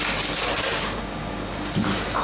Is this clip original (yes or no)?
yes